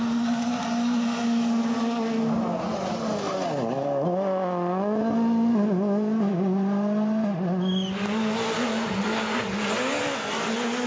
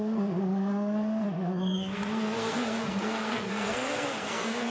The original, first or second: first